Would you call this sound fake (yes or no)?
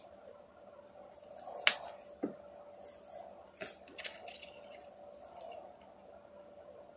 no